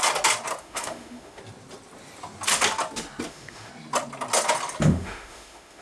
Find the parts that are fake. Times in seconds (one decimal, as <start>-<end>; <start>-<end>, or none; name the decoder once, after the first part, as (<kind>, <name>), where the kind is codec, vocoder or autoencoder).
0.6-1.4 (autoencoder, DAC-VAE); 3.3-3.7; 4.9-5.8